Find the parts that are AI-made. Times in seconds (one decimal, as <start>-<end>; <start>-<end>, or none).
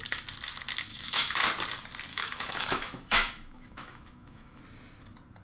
0.9-1.4; 2.1-4.6